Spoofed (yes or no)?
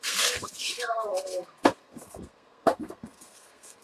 yes